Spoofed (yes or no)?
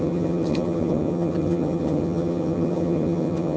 yes